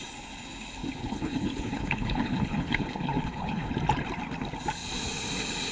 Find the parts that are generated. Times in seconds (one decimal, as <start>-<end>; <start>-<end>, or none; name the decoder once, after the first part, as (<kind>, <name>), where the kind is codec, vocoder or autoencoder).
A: 1.0-3.7 (codec, HILCodec)